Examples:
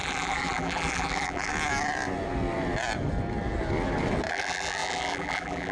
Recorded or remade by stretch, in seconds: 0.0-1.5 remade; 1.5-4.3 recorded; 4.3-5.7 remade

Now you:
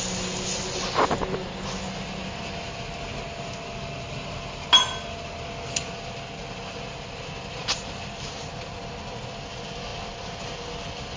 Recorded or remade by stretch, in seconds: 0.0-7.6 recorded; 7.6-8.8 remade; 8.8-9.9 recorded; 9.9-10.6 remade; 10.6-11.2 recorded

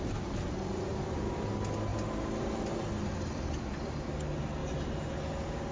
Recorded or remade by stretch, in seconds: 0.0-0.9 recorded; 0.9-1.5 remade; 1.5-4.6 recorded; 4.6-5.1 remade; 5.1-5.7 recorded

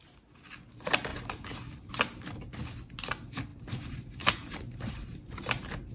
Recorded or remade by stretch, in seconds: 0.0-1.1 recorded; 1.1-1.9 remade; 1.9-3.5 recorded; 3.5-5.9 remade

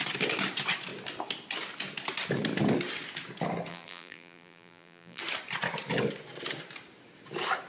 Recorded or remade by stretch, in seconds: 0.0-3.7 recorded; 3.7-5.2 remade; 5.2-7.7 recorded

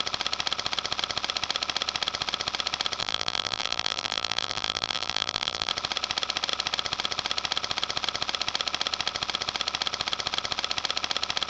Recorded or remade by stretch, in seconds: 0.0-3.0 recorded; 3.0-5.7 remade; 5.7-11.5 recorded

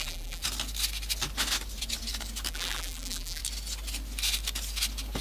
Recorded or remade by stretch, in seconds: 0.0-0.4 remade; 0.4-2.5 recorded; 2.5-3.4 remade; 3.4-5.2 recorded

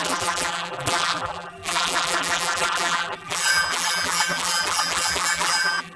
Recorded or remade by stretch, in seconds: 0.0-6.0 remade